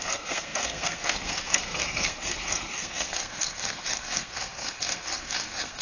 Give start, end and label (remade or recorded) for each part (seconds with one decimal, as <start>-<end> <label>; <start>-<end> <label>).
0.0-5.8 remade

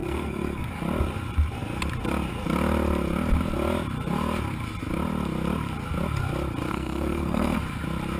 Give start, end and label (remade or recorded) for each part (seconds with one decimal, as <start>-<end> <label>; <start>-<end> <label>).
0.0-0.7 remade; 0.7-6.7 recorded; 6.7-7.6 remade; 7.6-8.2 recorded

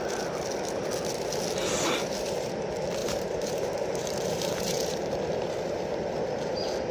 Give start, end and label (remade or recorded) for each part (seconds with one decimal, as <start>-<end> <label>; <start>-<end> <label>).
0.0-3.0 recorded; 3.0-5.1 remade; 5.1-6.9 recorded

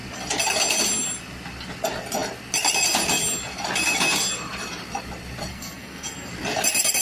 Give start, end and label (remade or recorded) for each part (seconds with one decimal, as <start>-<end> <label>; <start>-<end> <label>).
0.0-5.5 recorded; 5.5-6.3 remade; 6.3-7.0 recorded